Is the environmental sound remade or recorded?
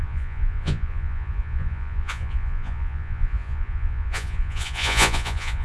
remade